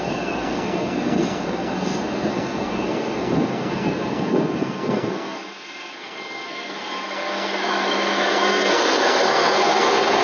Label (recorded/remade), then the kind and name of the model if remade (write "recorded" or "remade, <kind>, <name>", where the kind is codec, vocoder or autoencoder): remade, codec, SNAC